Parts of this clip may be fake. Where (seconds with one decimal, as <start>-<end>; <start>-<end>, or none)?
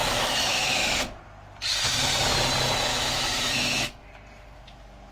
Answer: 0.0-1.2; 2.9-4.1